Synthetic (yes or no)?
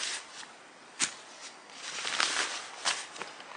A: no